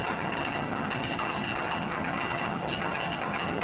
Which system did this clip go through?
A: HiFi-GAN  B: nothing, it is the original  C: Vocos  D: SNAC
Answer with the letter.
A